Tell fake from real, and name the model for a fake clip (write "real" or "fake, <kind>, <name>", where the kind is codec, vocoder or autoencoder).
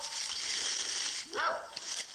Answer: real